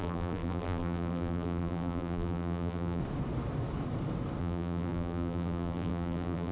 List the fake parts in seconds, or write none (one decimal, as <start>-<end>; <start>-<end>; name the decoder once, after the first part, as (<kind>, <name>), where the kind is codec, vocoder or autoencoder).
0.0-3.0 (vocoder, BigVGAN v2); 4.4-6.5